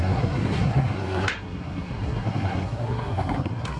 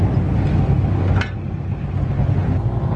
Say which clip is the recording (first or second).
second